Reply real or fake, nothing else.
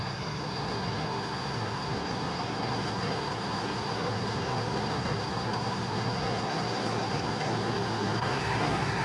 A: fake